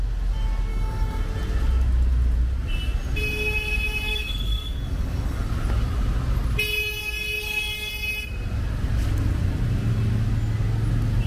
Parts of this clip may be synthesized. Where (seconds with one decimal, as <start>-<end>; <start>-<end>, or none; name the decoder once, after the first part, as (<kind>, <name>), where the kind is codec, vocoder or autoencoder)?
0.7-1.2 (codec, DAC); 4.1-5.5